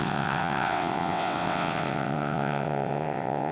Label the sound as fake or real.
fake